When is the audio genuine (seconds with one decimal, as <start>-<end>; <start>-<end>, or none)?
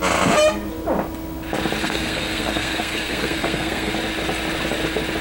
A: 0.0-1.8; 3.9-5.2